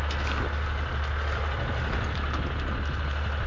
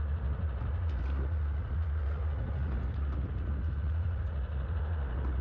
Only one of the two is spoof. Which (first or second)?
second